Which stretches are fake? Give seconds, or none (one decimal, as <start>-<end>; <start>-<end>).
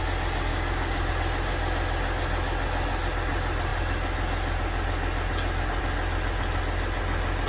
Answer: 0.5-1.1